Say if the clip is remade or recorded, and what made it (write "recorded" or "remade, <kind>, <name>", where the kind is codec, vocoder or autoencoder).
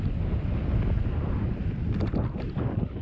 recorded